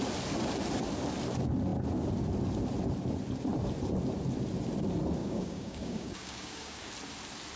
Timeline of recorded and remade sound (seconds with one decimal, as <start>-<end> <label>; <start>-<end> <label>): 0.0-5.2 recorded; 5.2-6.9 remade; 6.9-7.6 recorded